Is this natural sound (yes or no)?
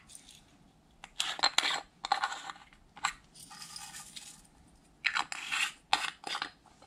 yes